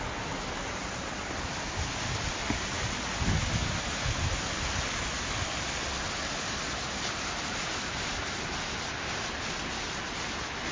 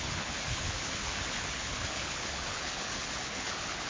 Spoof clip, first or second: second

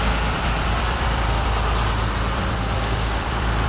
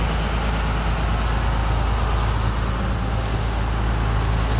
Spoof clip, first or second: first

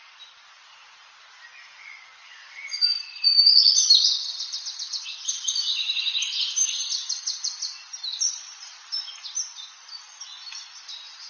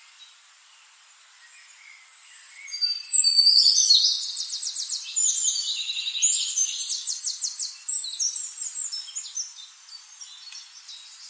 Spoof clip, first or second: first